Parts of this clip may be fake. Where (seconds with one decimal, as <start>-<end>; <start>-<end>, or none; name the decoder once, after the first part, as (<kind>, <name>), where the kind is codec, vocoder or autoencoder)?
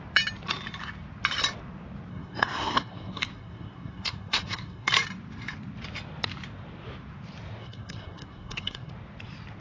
2.1-4.9 (codec, SNAC); 7.6-8.9